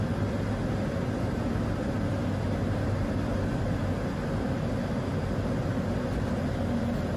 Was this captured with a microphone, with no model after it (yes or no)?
yes